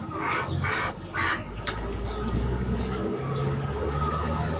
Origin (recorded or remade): remade